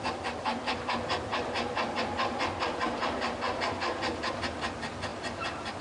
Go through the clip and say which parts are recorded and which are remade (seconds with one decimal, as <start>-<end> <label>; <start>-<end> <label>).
0.0-5.8 recorded